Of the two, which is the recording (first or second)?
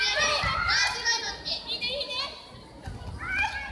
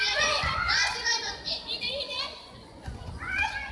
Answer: first